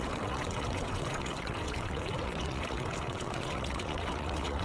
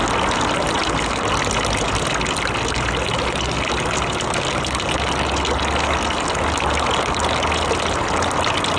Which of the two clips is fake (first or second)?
first